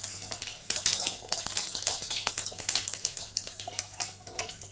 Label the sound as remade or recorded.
remade